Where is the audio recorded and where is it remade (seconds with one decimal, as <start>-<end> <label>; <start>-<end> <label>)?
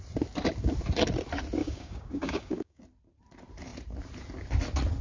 0.0-1.6 recorded; 1.6-2.8 remade; 2.8-5.0 recorded